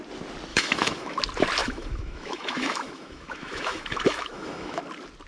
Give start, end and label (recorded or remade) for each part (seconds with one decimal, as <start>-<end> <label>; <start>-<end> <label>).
0.0-0.5 recorded; 0.5-1.2 remade; 1.2-1.6 recorded; 1.6-4.8 remade; 4.8-5.3 recorded